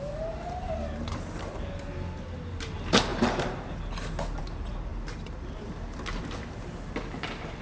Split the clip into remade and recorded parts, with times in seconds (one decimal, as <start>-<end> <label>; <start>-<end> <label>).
0.0-7.6 recorded